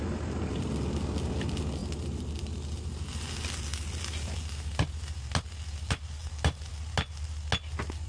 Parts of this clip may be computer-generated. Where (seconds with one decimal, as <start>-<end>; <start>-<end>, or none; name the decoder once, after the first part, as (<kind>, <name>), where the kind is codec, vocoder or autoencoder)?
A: none